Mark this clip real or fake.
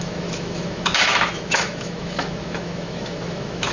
fake